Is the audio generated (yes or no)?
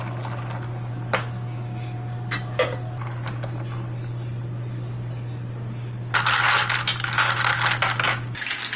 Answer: no